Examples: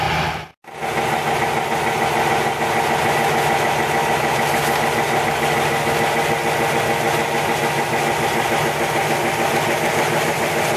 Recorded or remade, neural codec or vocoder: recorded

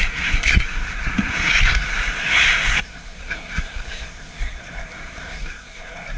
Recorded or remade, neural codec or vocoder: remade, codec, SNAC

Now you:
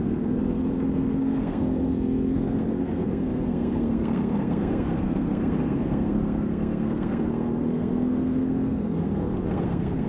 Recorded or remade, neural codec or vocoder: remade, codec, SNAC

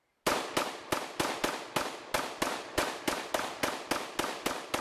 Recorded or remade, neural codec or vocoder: recorded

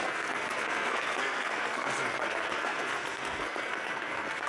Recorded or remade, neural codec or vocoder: remade, codec, SNAC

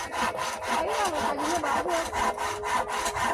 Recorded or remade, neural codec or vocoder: recorded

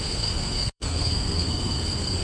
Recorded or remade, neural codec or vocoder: remade, codec, SNAC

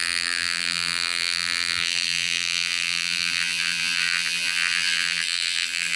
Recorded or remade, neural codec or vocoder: remade, vocoder, BigVGAN v2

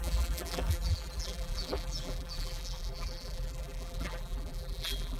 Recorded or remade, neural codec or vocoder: remade, vocoder, BigVGAN v2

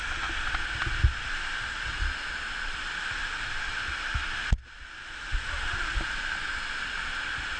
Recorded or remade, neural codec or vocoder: recorded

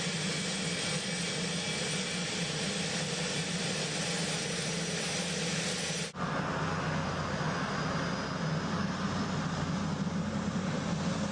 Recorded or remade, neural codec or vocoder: recorded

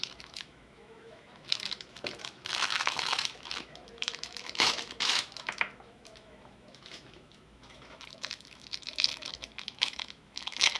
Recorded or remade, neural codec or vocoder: remade, autoencoder, DAC-VAE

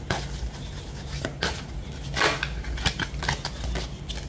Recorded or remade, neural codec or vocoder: recorded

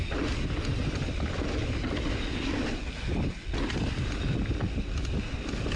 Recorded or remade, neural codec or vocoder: recorded